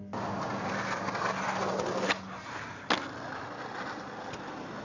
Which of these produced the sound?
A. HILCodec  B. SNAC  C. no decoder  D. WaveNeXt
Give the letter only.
C